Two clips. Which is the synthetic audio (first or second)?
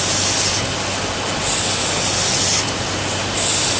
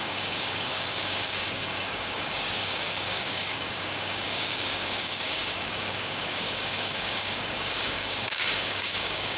second